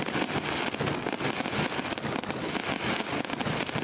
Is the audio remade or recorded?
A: recorded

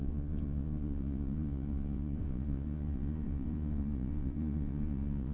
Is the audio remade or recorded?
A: remade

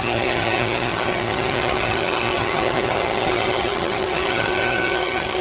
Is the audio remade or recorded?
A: remade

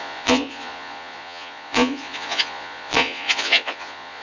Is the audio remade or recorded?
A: remade